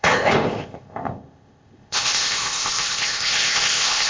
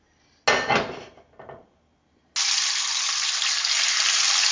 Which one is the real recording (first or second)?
second